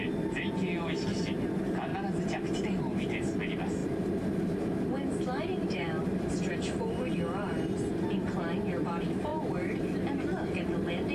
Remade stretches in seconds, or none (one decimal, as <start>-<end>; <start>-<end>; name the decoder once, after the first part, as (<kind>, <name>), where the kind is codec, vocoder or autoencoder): 5.5-7.1 (vocoder, BigVGAN v2)